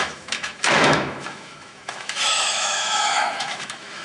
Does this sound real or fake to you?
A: fake